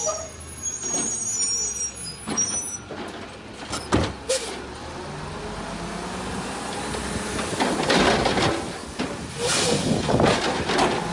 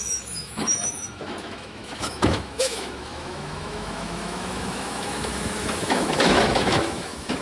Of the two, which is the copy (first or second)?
second